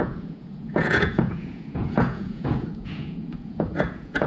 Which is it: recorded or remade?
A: remade